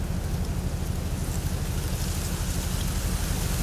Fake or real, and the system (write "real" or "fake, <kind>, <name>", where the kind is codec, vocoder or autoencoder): real